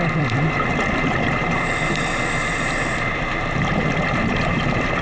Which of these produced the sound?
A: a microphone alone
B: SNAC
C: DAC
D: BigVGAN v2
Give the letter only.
D